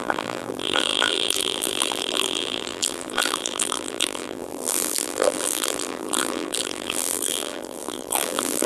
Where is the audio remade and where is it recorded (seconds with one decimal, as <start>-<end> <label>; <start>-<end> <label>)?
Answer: 0.0-8.7 remade